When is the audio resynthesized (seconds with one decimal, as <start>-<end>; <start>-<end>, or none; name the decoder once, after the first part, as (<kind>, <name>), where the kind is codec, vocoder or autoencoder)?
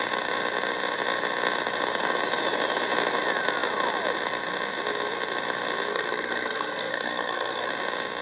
5.9-7.7 (codec, SNAC)